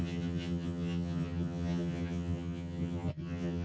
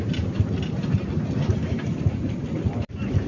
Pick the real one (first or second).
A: second